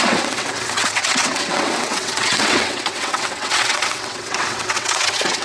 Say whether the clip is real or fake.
fake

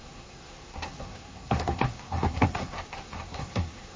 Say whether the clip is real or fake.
fake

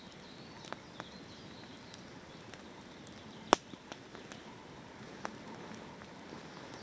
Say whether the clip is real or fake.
real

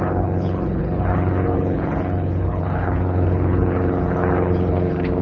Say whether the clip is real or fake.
fake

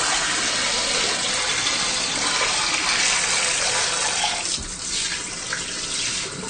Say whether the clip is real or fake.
real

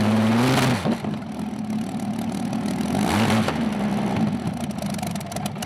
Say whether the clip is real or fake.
real